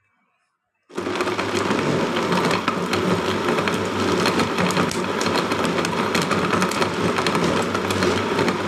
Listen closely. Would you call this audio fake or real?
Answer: real